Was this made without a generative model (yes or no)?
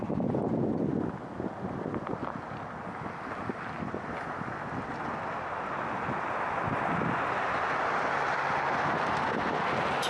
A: yes